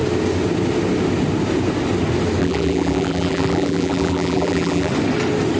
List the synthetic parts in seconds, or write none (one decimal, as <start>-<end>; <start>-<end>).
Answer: 2.4-4.9